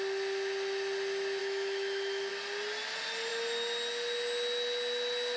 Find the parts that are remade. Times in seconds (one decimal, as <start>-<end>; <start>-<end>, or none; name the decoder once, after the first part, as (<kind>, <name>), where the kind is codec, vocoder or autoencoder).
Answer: 1.4-2.3 (autoencoder, DAC-VAE)